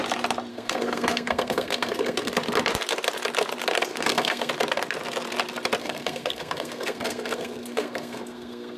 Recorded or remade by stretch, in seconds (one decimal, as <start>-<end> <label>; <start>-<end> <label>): 0.0-0.5 recorded; 0.5-2.3 remade; 2.3-3.9 recorded; 3.9-4.5 remade; 4.5-5.8 recorded; 5.8-8.8 remade